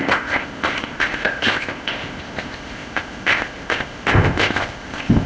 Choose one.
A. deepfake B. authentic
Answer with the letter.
A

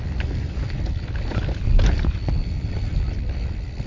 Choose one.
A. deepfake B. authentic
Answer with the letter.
B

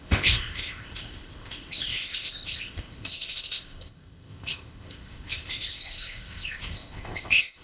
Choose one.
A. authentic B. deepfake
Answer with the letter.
B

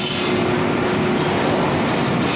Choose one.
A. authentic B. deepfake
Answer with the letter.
A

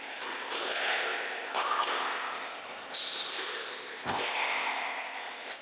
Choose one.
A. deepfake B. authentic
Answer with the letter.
A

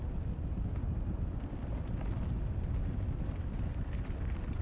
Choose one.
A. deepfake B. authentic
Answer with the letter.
B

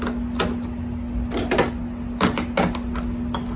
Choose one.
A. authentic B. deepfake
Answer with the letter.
A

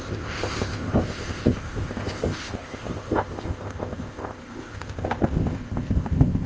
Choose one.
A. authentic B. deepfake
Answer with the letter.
B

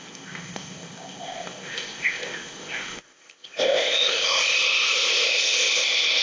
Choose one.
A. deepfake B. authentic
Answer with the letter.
A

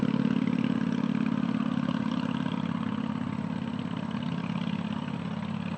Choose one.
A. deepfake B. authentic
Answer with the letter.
B